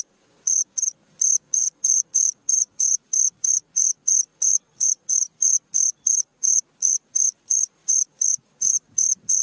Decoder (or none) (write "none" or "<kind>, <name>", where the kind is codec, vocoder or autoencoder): vocoder, Vocos